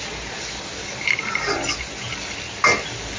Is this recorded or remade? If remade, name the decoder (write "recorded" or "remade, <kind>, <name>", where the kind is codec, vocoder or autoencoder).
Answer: recorded